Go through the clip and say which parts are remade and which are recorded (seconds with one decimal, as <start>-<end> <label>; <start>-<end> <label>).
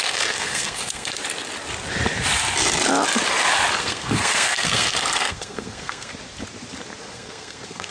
0.0-1.2 remade; 1.2-3.8 recorded; 3.8-6.1 remade; 6.1-7.0 recorded; 7.0-7.9 remade